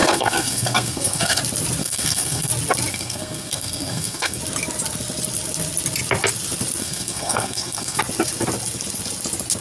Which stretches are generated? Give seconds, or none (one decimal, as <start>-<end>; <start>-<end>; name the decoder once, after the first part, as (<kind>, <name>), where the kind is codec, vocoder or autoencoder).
0.0-1.4 (codec, SNAC); 1.8-2.5; 2.9-4.4; 6.8-8.0